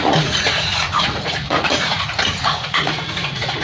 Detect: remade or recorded remade